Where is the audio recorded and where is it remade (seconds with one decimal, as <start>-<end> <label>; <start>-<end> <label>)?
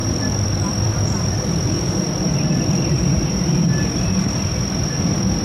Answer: 0.0-3.2 remade; 3.2-5.4 recorded